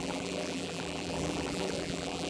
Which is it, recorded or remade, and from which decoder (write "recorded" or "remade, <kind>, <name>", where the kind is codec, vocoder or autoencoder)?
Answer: remade, vocoder, BigVGAN v2